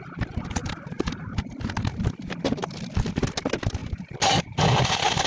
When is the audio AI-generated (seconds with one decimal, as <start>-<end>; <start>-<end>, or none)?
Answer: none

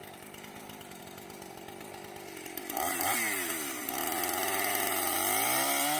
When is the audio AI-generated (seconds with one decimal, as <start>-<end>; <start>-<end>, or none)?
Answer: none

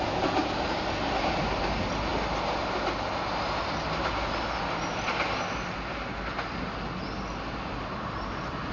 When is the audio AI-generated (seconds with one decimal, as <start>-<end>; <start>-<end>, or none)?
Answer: none

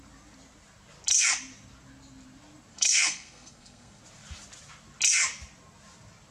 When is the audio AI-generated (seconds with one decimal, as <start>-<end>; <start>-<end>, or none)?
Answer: 2.7-4.0

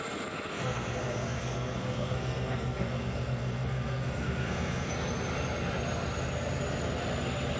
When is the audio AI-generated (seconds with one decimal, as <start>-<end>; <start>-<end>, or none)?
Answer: 0.5-4.9

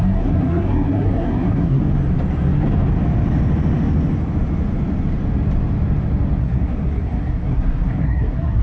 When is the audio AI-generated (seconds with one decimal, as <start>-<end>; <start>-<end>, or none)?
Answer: 0.0-1.8; 6.4-8.6

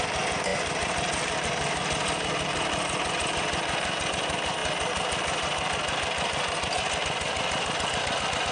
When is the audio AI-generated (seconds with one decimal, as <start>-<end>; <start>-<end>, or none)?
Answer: none

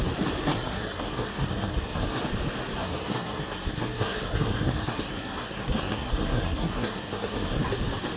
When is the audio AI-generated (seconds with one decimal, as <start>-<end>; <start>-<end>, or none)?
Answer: 0.5-2.2; 2.8-7.6